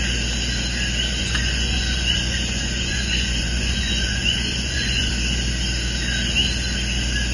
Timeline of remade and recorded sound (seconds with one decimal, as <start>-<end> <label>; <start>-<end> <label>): 0.0-1.2 recorded; 1.2-5.1 remade; 5.1-7.3 recorded